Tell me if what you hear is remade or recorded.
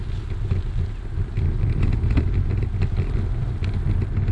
recorded